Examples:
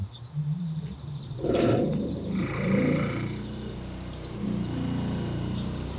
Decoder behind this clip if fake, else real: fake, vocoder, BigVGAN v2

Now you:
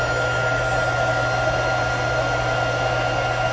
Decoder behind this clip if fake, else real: real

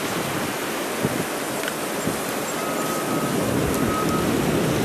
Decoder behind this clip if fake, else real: real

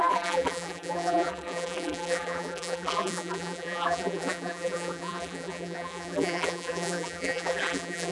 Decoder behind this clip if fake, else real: fake, vocoder, BigVGAN v2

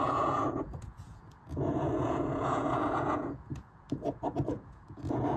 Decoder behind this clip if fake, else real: fake, vocoder, Vocos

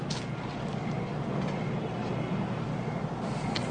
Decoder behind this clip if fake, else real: real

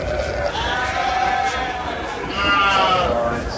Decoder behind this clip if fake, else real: real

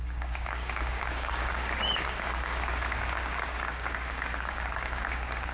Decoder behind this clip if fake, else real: fake, codec, DAC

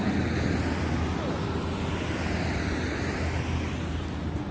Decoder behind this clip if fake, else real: real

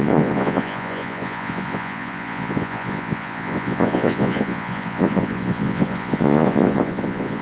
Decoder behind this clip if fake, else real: fake, vocoder, Vocos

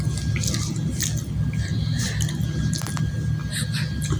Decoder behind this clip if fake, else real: real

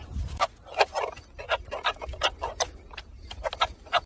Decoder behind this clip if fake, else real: real